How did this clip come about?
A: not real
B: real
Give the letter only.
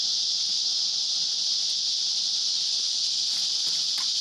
B